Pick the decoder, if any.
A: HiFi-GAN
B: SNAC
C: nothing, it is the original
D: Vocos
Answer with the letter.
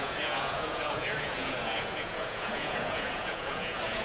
D